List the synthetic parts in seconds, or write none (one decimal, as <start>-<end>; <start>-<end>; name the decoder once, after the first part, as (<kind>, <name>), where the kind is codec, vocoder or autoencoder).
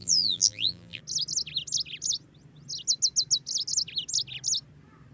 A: 0.0-1.0 (vocoder, BigVGAN v2)